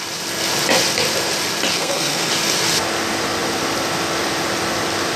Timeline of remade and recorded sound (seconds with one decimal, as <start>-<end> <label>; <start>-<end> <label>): 0.0-1.7 recorded; 1.7-2.3 remade; 2.3-5.2 recorded